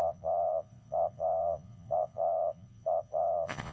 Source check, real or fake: fake